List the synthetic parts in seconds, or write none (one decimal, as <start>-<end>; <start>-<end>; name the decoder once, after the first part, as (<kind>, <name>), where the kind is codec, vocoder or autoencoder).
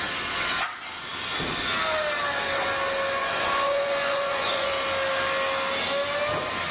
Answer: 3.2-4.7 (vocoder, Vocos)